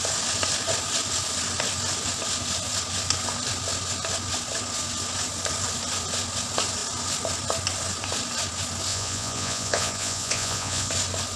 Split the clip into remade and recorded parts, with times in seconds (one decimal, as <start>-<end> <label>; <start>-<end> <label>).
0.0-8.9 recorded; 8.9-10.9 remade; 10.9-11.4 recorded

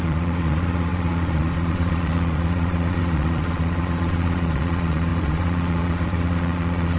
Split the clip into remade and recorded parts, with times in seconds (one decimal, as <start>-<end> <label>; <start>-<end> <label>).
0.0-7.0 remade